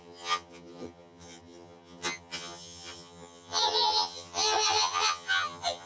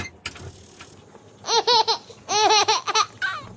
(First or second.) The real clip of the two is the second